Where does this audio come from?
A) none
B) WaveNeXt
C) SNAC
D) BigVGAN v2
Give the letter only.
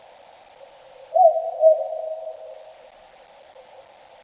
A